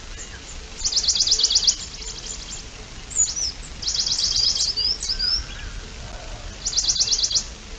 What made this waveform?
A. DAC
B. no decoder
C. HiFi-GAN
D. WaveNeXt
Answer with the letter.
B